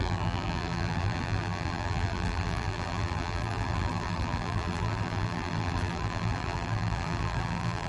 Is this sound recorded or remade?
remade